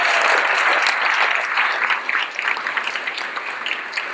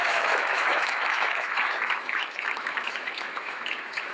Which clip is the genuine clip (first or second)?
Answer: first